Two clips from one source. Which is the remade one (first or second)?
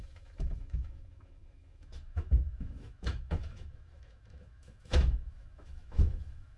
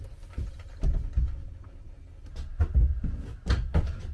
first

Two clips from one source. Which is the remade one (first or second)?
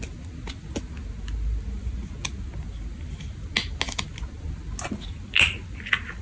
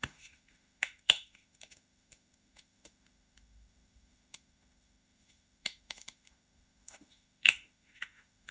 second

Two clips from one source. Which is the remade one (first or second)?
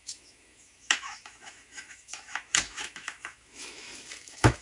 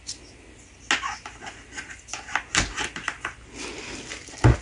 first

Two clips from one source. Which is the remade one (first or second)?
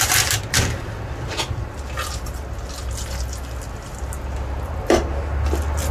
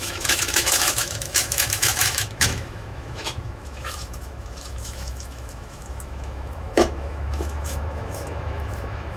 second